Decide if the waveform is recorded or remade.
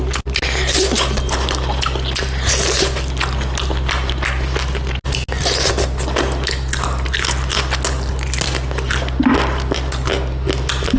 recorded